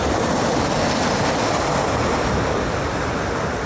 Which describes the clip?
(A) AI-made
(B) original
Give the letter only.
B